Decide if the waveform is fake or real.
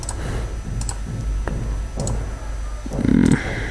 real